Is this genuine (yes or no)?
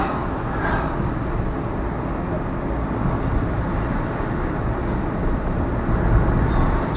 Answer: yes